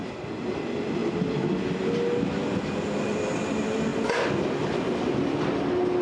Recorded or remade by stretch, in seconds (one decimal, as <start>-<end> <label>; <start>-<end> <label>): 0.0-6.0 recorded